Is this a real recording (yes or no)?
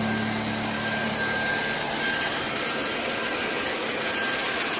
yes